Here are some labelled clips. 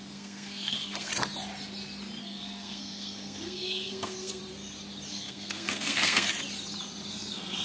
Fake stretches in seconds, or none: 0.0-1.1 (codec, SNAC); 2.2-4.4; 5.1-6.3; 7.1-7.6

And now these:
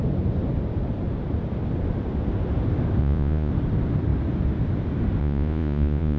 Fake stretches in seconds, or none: 3.0-3.5 (vocoder, Vocos); 5.2-6.2

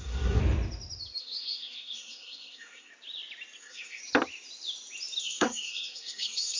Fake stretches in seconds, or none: 0.0-0.4 (codec, SNAC); 1.2-2.9; 3.6-4.0; 5.2-6.6

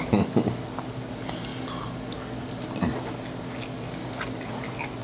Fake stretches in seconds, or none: none